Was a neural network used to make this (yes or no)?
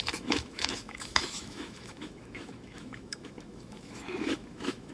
yes